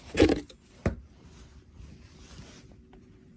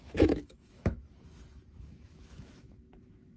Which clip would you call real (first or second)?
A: first